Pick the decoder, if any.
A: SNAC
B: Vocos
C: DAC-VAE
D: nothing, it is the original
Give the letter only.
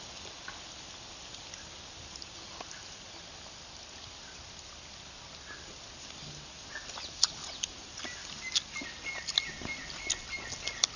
D